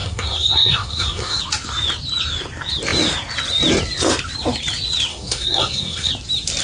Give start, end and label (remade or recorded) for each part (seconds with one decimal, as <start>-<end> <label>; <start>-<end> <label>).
0.0-1.4 remade; 1.4-5.1 recorded; 5.1-6.1 remade; 6.1-6.6 recorded